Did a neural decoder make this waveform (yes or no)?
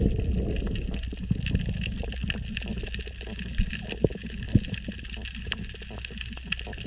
no